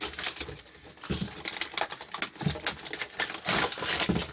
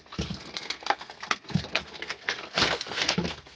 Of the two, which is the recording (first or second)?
first